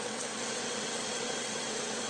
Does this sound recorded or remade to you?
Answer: remade